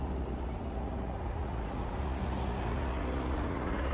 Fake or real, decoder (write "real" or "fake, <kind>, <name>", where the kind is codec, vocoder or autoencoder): fake, vocoder, Vocos